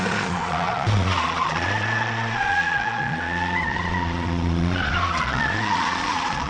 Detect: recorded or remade remade